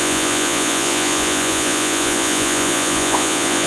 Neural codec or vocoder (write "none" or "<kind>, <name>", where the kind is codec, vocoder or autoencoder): vocoder, Vocos